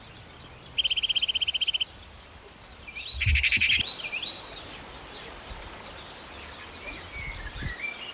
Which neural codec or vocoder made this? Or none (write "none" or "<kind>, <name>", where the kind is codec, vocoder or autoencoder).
none